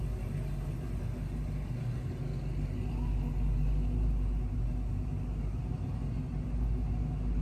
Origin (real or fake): real